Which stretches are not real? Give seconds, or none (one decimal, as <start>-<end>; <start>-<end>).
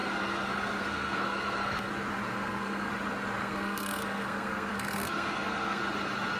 0.0-1.9; 2.3-2.9; 3.4-5.8